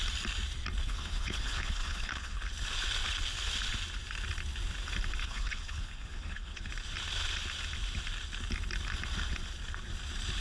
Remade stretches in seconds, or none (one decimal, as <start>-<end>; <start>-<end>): 0.8-2.5; 5.2-6.7